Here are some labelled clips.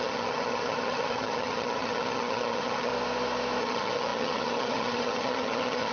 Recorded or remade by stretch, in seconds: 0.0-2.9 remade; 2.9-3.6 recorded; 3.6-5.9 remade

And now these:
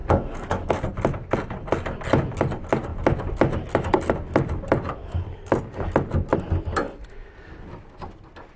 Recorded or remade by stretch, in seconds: 0.0-0.8 remade; 0.8-8.6 recorded

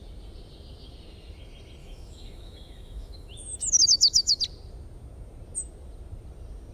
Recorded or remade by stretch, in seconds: 0.0-1.8 recorded; 1.8-4.4 remade; 4.4-6.7 recorded